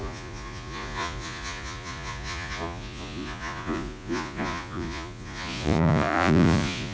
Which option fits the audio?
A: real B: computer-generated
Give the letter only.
B